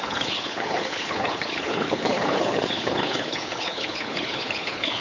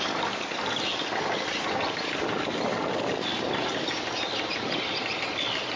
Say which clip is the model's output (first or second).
first